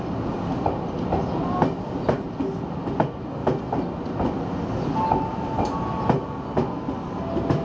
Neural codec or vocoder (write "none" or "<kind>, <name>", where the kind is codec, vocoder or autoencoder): none